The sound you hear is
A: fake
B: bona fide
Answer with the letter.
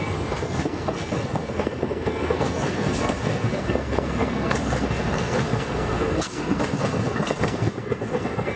A